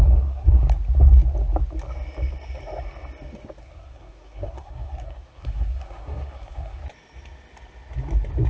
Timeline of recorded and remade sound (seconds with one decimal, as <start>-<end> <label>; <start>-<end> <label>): 0.0-0.6 remade; 0.6-3.6 recorded; 3.6-6.8 remade; 6.8-8.5 recorded

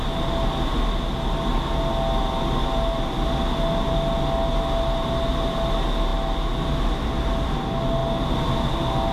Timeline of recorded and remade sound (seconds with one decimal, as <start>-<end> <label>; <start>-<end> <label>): 0.0-9.1 recorded